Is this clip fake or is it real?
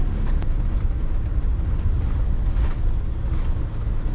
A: real